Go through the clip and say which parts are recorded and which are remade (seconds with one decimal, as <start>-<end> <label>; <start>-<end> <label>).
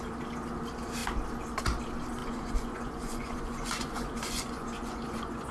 0.0-2.2 recorded; 2.2-5.5 remade